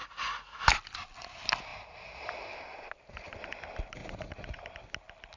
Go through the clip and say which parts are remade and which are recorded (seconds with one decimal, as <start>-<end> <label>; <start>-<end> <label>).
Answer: 0.0-0.6 remade; 0.6-4.0 recorded; 4.0-4.6 remade; 4.6-5.4 recorded